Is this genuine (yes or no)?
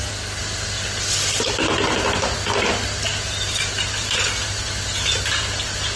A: yes